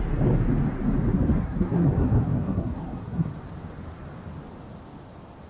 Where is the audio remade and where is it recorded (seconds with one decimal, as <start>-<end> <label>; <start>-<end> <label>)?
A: 0.0-1.1 recorded; 1.1-3.3 remade; 3.3-5.5 recorded